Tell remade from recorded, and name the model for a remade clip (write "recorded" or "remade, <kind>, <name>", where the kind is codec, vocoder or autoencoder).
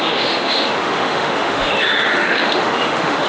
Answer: remade, autoencoder, DAC-VAE